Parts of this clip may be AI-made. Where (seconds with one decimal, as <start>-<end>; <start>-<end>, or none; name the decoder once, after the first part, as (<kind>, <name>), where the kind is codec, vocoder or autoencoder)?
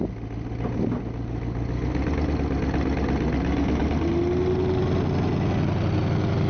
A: none